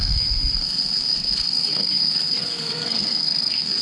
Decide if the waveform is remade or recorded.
remade